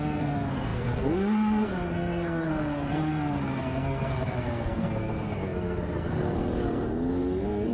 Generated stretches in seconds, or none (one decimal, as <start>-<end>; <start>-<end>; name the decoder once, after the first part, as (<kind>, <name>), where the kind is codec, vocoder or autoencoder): 0.0-7.7 (codec, SNAC)